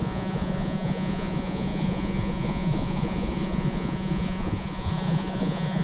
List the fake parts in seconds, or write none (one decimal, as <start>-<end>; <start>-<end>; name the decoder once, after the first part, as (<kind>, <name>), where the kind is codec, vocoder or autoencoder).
0.0-5.8 (vocoder, Vocos)